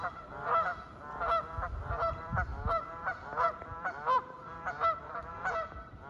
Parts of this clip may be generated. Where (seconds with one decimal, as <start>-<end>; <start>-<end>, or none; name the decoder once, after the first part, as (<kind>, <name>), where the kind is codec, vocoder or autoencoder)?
0.0-0.7 (vocoder, BigVGAN v2); 2.1-6.1

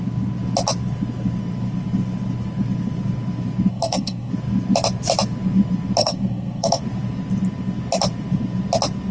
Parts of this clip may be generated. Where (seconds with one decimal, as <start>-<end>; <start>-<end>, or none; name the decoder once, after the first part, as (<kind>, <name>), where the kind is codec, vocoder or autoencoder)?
3.7-4.3 (codec, SNAC); 6.0-6.8

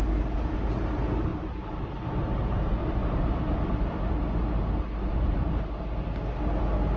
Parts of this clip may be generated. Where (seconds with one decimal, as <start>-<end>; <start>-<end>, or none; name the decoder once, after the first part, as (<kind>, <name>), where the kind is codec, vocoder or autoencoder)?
1.3-1.9 (vocoder, BigVGAN v2); 2.8-4.1; 5.1-5.8

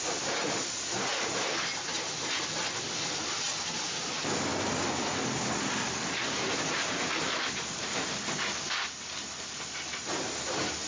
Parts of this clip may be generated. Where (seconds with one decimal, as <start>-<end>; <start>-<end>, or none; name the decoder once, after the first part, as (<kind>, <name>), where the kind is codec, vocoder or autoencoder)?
none

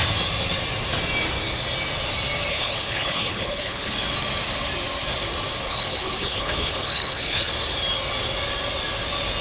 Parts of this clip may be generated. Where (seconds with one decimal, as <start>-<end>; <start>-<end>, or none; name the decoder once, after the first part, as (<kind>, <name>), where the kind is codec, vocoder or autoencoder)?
2.5-3.9 (codec, HILCodec); 5.7-7.5